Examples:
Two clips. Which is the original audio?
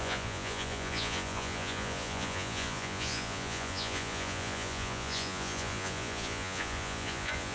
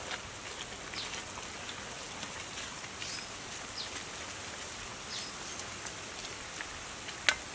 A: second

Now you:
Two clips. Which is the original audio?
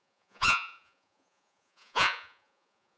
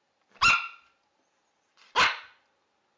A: second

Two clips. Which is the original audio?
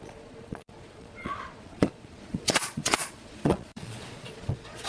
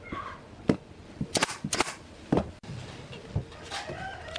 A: second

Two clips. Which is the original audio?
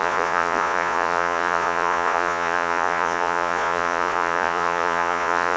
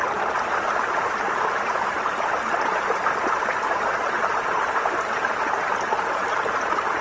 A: second